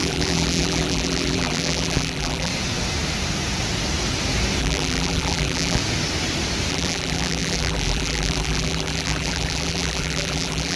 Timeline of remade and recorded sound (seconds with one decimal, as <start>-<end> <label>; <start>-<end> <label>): 0.0-2.5 remade; 2.5-4.6 recorded; 4.6-5.8 remade; 5.8-6.7 recorded; 6.7-10.8 remade